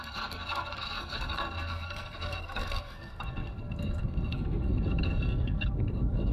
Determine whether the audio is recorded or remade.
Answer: remade